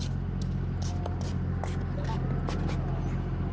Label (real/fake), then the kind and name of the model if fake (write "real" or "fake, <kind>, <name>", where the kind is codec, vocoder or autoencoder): real